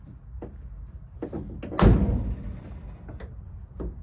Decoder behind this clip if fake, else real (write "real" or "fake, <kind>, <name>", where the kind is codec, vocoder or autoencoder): real